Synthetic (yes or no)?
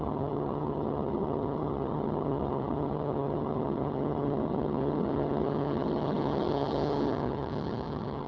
yes